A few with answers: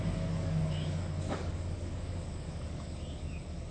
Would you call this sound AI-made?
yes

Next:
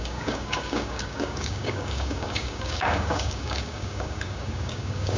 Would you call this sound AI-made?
yes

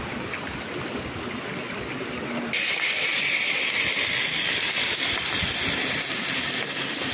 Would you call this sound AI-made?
no